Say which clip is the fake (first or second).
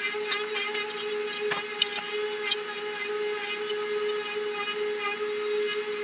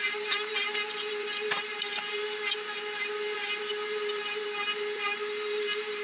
second